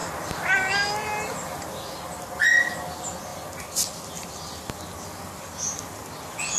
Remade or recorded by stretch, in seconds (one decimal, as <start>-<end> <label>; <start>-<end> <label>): 0.0-1.8 remade; 1.8-6.6 recorded